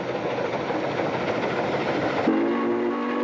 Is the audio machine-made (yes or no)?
no